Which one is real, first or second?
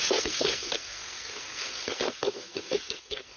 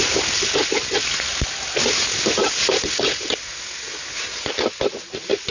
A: second